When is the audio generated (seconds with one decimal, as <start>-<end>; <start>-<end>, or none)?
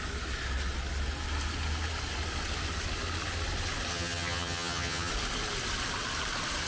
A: 3.9-5.1